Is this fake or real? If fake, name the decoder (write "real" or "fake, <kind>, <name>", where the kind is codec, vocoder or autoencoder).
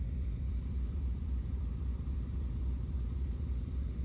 fake, vocoder, BigVGAN v2